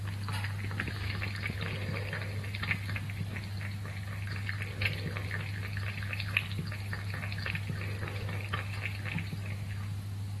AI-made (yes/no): no